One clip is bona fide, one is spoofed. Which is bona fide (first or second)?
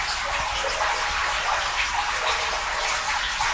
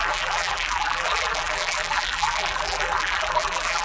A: first